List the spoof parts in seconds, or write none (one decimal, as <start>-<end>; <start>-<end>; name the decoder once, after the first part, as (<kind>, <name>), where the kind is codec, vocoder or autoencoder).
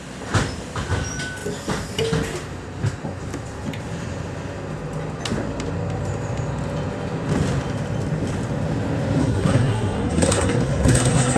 9.2-11.4 (codec, SNAC)